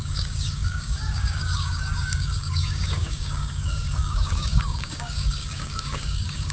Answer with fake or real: fake